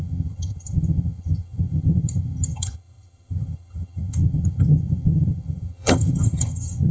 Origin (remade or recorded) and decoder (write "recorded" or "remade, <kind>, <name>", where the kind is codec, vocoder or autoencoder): remade, vocoder, HiFi-GAN